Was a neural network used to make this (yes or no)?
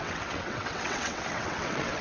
yes